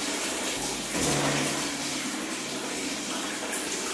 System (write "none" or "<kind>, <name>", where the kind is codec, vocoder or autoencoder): none